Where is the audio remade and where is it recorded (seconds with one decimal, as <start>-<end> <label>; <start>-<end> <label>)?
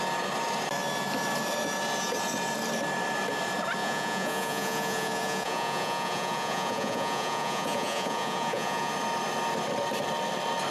0.0-3.8 recorded; 3.8-8.9 remade; 8.9-10.7 recorded